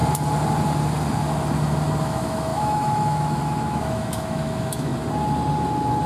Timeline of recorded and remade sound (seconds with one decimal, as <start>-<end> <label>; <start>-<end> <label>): 0.0-2.0 recorded; 2.0-4.9 remade; 4.9-6.1 recorded